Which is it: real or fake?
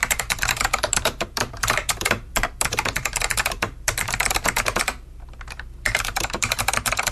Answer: fake